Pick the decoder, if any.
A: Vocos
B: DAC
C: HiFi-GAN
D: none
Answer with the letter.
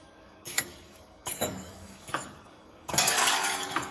B